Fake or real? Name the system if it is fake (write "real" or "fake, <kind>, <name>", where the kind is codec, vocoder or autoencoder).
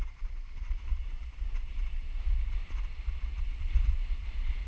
fake, vocoder, BigVGAN v2